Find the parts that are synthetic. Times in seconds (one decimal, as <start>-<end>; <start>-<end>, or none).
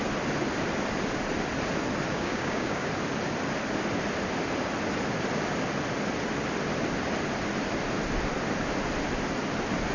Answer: 2.1-2.9